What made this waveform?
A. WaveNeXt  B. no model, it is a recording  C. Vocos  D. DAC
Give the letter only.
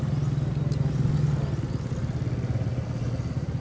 B